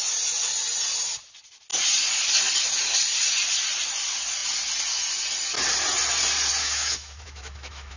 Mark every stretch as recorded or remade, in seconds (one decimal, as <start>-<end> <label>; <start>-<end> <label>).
0.0-6.6 recorded; 6.6-8.0 remade